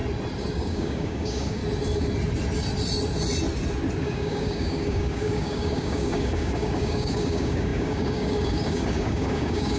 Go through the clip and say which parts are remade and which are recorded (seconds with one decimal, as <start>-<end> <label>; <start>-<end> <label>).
0.0-0.5 recorded; 0.5-1.6 remade; 1.6-4.0 recorded; 4.0-9.8 remade